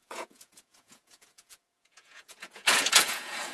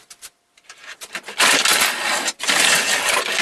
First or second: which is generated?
first